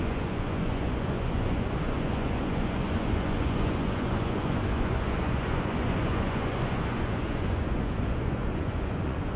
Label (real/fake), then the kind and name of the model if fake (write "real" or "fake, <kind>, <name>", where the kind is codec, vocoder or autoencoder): fake, vocoder, Vocos